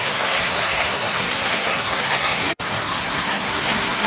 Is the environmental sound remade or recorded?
remade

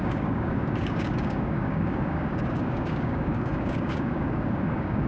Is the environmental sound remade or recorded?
remade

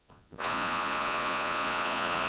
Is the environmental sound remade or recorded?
remade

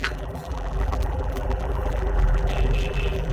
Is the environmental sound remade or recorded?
remade